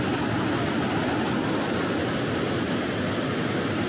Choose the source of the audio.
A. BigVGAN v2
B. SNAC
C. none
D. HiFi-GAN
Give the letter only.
C